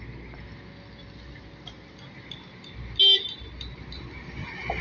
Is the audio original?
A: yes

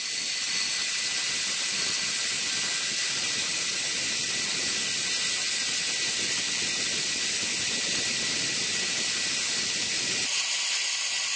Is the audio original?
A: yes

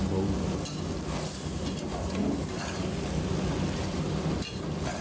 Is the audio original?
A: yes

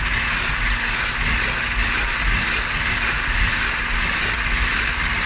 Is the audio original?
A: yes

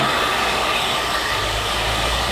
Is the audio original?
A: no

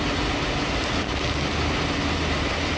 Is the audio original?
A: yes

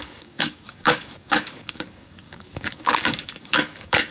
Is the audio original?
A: no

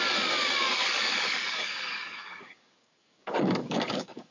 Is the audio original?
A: no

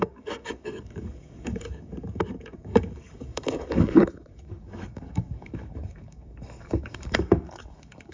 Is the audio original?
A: no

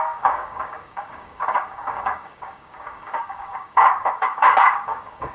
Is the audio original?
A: no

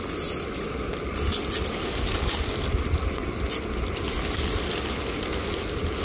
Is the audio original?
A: yes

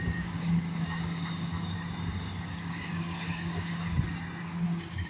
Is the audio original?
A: no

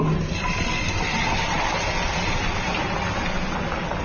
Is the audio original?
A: yes